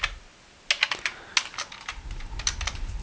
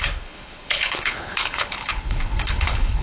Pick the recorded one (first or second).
first